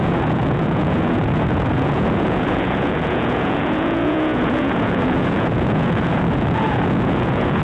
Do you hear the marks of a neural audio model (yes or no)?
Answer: yes